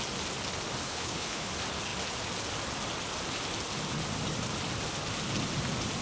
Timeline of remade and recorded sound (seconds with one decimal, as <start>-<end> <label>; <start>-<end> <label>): 0.0-0.8 recorded; 0.8-1.5 remade; 1.5-6.0 recorded